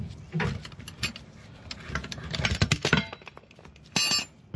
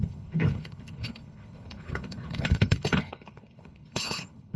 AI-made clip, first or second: second